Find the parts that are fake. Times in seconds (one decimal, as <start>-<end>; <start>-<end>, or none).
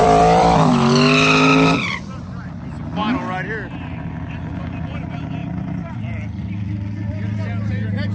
0.0-0.7; 1.5-2.2; 5.4-6.4